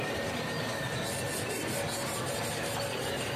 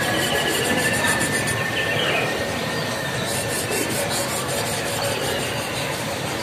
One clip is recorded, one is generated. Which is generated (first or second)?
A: second